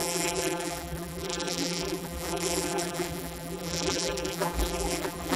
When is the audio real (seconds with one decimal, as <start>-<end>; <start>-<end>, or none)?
none